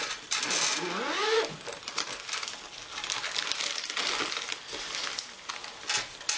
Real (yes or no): yes